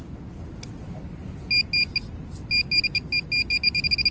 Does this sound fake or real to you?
real